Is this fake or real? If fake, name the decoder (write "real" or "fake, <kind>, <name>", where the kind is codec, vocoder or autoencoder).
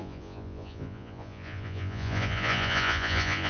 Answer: fake, vocoder, Vocos